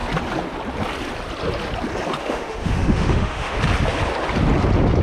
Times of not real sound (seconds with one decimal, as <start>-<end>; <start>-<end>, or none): 2.2-3.6